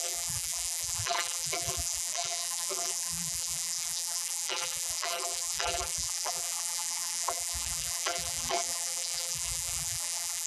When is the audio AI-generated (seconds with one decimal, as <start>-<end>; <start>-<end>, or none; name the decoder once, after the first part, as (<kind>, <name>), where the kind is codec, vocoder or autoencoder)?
0.0-10.5 (vocoder, BigVGAN v2)